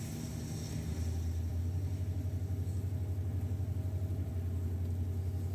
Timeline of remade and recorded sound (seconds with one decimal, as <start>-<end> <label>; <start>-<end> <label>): 0.0-5.5 recorded